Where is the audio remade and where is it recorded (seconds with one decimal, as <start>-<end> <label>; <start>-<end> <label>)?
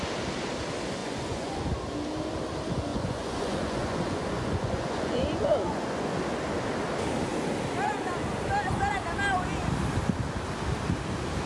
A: 0.0-1.0 recorded; 1.0-1.7 remade; 1.7-2.9 recorded; 2.9-6.2 remade; 6.2-11.5 recorded